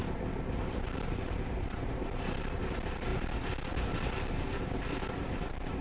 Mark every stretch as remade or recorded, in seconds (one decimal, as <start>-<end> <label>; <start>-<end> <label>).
0.0-3.1 remade; 3.1-4.3 recorded; 4.3-5.8 remade